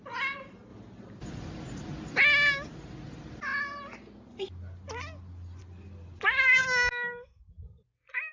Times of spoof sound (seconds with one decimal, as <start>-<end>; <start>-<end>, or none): none